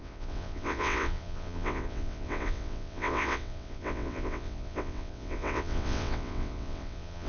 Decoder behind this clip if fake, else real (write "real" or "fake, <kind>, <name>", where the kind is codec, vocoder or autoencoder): fake, vocoder, WaveNeXt